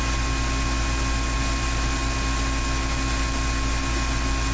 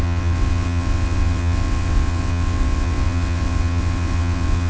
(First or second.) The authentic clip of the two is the first